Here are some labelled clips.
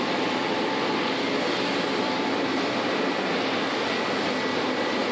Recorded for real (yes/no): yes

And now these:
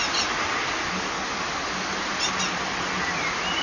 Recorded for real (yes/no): yes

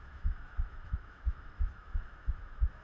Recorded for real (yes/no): no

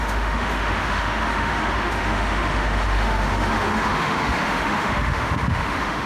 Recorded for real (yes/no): no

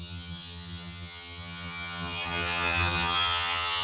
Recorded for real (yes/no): no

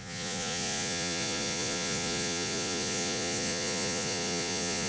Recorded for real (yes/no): no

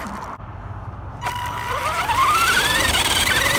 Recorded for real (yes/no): no